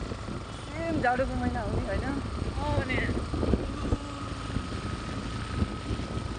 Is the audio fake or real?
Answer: real